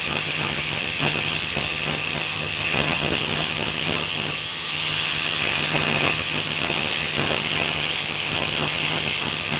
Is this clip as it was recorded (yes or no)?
no